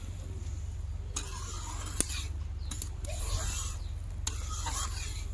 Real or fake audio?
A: real